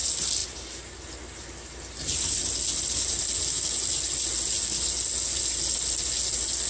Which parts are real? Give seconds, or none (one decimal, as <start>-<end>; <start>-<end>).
0.0-6.7